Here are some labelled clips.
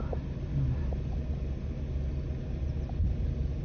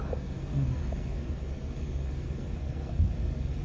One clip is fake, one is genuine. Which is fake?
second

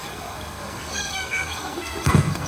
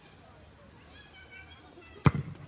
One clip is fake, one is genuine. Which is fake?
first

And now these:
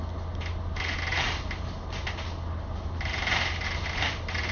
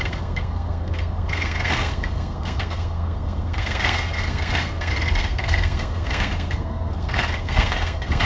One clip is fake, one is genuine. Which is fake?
second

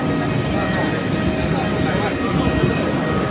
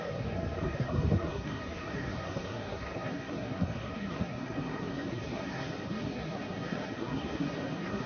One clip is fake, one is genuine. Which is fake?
second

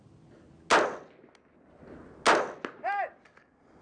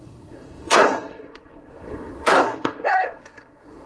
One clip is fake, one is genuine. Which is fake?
second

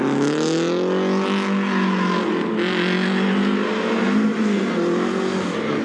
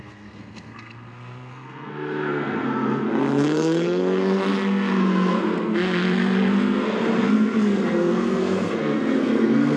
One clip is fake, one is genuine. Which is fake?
second